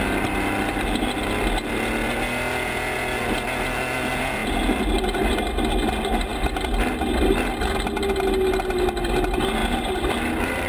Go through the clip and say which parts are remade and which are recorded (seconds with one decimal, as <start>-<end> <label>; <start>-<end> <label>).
0.0-9.6 recorded; 9.6-10.7 remade